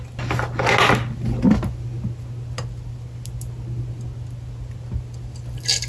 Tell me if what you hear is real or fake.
real